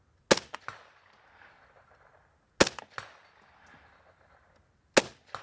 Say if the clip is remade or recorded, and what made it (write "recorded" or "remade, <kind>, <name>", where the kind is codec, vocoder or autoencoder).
recorded